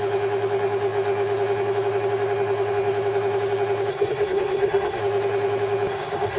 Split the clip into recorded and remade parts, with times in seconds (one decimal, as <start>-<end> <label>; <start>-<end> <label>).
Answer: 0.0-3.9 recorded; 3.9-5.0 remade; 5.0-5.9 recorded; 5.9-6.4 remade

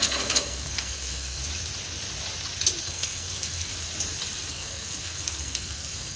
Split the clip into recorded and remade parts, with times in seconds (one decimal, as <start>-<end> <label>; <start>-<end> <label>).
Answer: 0.0-1.4 remade; 1.4-2.8 recorded; 2.8-3.7 remade; 3.7-4.5 recorded; 4.5-6.2 remade

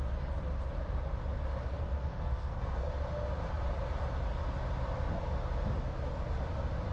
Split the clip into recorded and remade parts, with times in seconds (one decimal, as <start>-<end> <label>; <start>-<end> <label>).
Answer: 0.0-1.7 recorded; 1.7-2.9 remade; 2.9-6.9 recorded